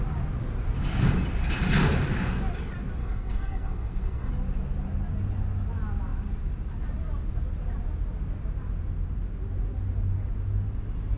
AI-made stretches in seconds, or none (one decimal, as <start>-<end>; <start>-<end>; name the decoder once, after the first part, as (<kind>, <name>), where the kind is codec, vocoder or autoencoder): 3.0-4.3 (codec, SNAC)